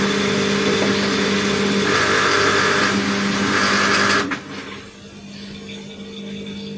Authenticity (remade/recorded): recorded